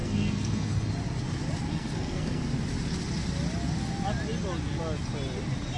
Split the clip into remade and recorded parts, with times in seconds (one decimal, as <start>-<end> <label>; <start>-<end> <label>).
0.0-0.9 remade; 0.9-1.7 recorded; 1.7-2.4 remade; 2.4-5.8 recorded